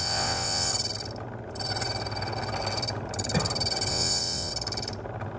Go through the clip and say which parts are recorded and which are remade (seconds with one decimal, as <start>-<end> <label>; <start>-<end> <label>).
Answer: 0.0-0.7 remade; 0.7-3.9 recorded; 3.9-4.5 remade; 4.5-5.4 recorded